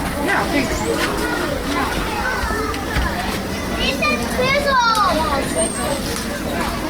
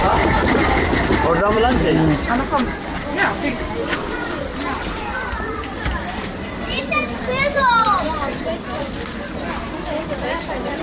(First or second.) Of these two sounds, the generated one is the second